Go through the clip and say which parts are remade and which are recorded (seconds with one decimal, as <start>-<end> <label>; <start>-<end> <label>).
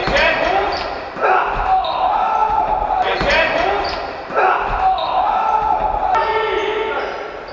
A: 0.0-1.1 remade; 1.1-2.4 recorded; 2.4-3.7 remade; 3.7-7.5 recorded